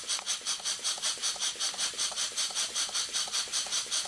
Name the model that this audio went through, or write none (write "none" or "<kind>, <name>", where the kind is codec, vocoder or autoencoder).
vocoder, BigVGAN v2